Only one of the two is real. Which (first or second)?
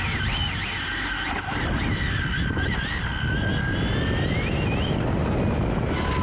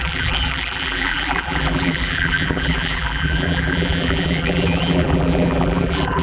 first